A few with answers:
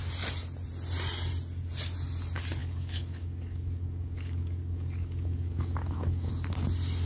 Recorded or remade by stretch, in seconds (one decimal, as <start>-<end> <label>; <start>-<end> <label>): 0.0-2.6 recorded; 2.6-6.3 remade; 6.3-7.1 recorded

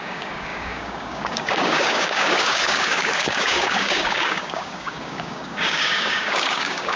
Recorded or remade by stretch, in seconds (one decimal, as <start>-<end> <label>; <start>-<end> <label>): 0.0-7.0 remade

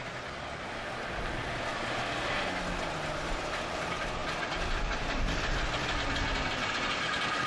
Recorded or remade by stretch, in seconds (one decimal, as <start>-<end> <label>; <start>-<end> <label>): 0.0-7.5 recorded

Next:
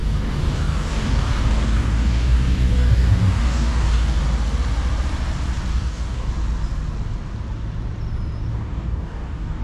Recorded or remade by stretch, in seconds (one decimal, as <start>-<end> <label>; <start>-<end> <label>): 0.0-4.2 remade; 4.2-5.7 recorded; 5.7-6.3 remade; 6.3-8.5 recorded; 8.5-9.6 remade

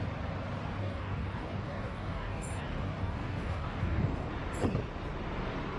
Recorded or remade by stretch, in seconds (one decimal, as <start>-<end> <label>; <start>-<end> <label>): 0.0-0.8 recorded; 0.8-4.3 remade; 4.3-5.8 recorded